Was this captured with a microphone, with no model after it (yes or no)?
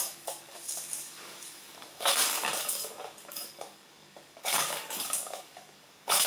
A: no